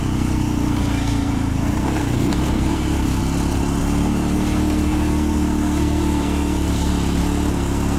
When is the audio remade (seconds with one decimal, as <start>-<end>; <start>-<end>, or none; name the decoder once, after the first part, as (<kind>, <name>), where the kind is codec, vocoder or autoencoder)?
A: 0.0-3.2 (codec, SNAC); 3.8-6.9; 7.5-8.0